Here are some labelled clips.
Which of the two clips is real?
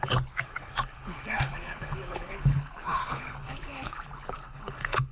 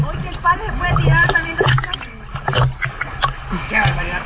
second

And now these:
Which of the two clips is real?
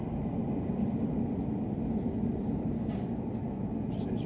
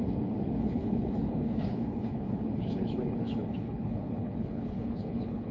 first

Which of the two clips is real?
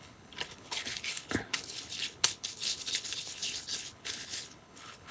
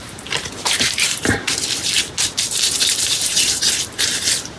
second